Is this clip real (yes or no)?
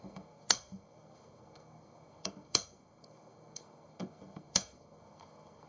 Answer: no